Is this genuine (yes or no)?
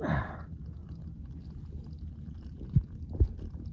yes